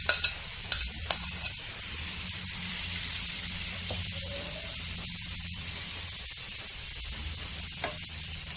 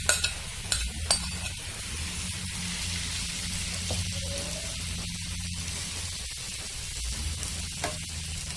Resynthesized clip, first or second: first